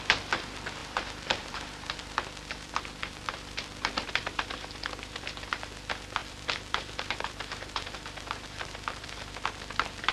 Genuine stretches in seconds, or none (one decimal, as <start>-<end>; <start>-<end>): 0.0-0.8; 5.5-6.2